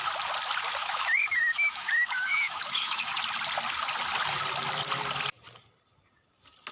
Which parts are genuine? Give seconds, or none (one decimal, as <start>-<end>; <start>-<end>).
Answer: 0.0-0.8; 3.1-6.7